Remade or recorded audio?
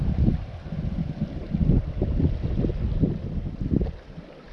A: recorded